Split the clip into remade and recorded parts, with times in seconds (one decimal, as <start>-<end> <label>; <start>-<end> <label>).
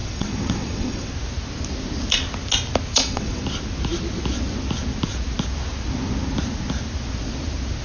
0.0-1.1 remade; 1.1-2.9 recorded; 2.9-3.4 remade; 3.4-7.8 recorded